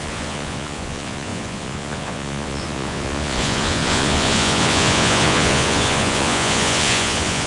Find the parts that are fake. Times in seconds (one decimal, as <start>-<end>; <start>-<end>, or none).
0.0-7.5